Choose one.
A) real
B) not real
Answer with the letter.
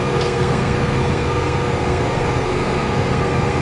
B